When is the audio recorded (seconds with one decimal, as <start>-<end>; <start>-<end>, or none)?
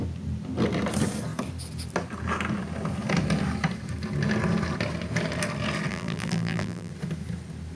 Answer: 0.0-5.9; 6.9-7.7